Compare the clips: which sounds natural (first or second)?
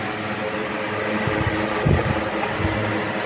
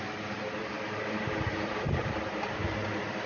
first